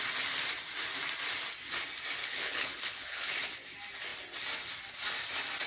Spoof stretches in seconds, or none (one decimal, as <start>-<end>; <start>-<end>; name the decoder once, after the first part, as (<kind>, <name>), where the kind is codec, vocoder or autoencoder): 2.2-3.3 (codec, HILCodec)